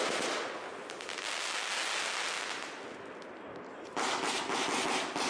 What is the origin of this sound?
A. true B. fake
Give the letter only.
A